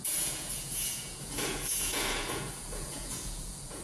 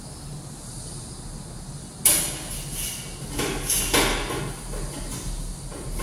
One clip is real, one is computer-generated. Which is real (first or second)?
second